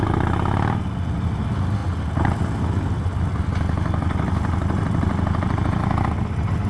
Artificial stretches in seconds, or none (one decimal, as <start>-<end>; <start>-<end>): none